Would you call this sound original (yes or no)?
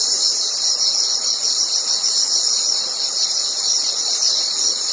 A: no